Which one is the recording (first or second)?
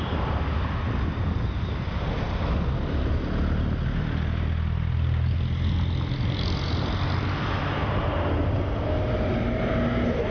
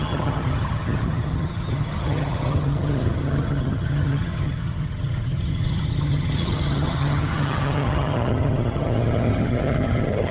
first